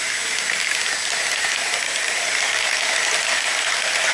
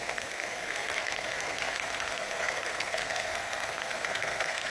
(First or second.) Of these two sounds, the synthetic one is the second